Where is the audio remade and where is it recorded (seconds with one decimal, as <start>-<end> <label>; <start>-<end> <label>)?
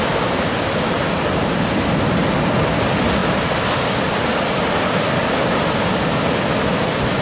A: 0.0-7.2 recorded